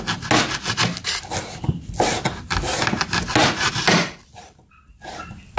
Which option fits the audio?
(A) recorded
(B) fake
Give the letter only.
A